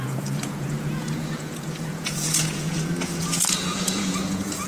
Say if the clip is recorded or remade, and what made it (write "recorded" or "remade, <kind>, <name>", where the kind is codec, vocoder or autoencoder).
remade, vocoder, Vocos